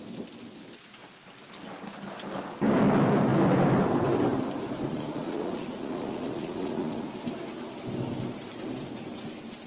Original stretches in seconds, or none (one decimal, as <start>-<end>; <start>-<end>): 0.0-4.9; 7.1-9.7